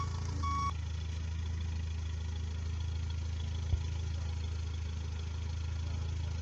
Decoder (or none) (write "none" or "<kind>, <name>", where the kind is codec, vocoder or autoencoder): none